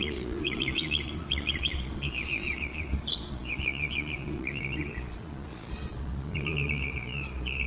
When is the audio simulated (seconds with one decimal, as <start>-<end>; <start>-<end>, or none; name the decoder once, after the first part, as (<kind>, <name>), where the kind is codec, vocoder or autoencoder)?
0.0-7.7 (vocoder, Vocos)